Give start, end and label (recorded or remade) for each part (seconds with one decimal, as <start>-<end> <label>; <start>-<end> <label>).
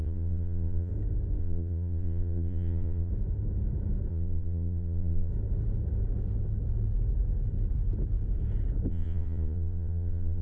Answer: 0.0-0.9 remade; 0.9-1.4 recorded; 1.4-3.1 remade; 3.1-4.1 recorded; 4.1-5.3 remade; 5.3-8.9 recorded; 8.9-10.4 remade